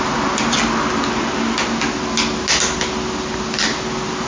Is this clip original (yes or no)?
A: yes